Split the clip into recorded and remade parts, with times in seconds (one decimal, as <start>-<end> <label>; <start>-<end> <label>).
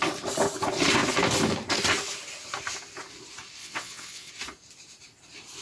0.0-3.6 recorded; 3.6-4.3 remade; 4.3-5.6 recorded